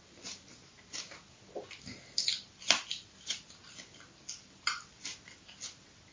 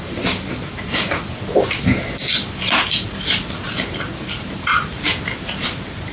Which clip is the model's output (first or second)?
second